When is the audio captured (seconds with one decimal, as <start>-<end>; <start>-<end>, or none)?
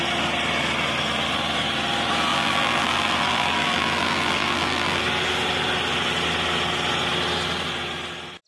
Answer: 0.0-2.3; 5.0-8.5